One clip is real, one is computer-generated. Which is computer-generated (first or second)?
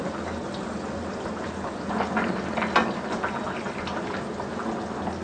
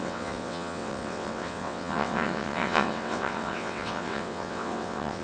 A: second